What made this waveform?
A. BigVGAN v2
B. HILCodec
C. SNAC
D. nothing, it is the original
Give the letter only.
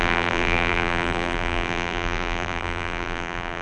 A